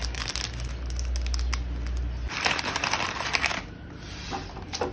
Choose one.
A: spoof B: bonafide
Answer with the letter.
B